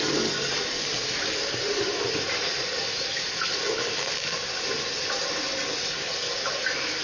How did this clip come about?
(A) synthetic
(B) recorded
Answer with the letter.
B